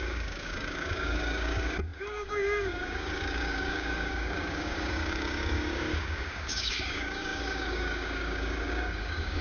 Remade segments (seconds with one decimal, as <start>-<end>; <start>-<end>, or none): 0.0-9.4